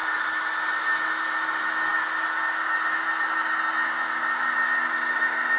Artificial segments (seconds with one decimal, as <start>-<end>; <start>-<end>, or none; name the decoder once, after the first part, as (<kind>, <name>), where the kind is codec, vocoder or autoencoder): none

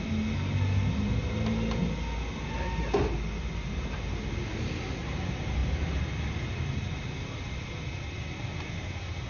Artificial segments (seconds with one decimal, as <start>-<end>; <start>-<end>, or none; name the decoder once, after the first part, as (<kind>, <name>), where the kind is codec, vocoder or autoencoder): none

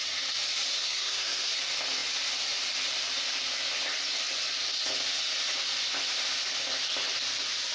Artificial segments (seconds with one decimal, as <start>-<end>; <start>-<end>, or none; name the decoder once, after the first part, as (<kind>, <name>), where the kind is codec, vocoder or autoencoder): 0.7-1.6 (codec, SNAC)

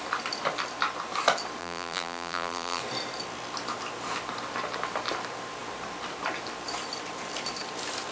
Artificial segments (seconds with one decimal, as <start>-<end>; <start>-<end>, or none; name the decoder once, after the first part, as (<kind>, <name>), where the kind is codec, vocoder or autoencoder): 1.6-2.8 (vocoder, BigVGAN v2)

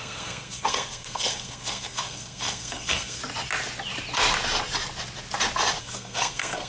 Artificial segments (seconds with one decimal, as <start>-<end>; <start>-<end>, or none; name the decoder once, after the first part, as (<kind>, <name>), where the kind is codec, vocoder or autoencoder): 0.0-3.2 (codec, SNAC); 5.8-6.7